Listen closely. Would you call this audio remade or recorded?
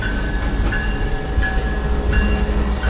recorded